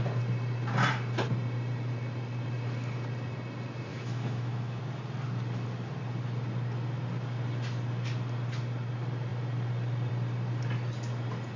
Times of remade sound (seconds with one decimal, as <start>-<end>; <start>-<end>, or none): 3.9-4.8